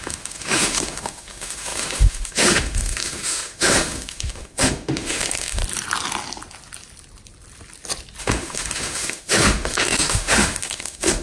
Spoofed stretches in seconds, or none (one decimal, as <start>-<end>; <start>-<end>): 0.0-5.6; 8.2-11.2